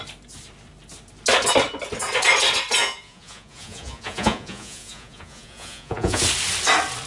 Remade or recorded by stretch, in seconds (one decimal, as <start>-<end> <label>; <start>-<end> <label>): 0.0-2.8 recorded; 2.8-6.2 remade; 6.2-7.1 recorded